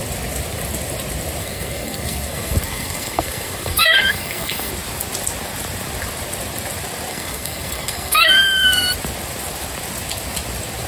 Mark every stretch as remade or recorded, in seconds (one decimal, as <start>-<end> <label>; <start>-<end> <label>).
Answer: 0.0-1.4 recorded; 1.4-4.7 remade; 4.7-7.1 recorded; 7.1-8.9 remade; 8.9-10.9 recorded